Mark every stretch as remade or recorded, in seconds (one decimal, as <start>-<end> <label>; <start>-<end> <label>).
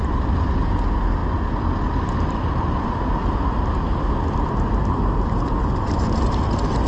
0.0-6.9 recorded